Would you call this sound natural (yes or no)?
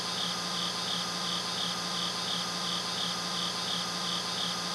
yes